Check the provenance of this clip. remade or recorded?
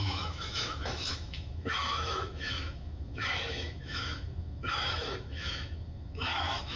remade